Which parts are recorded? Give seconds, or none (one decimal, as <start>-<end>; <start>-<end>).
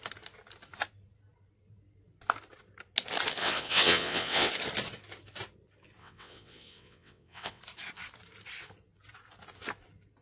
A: 0.0-3.4; 4.5-6.0; 7.6-10.2